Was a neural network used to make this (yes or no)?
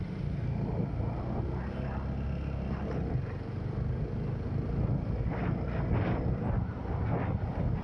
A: no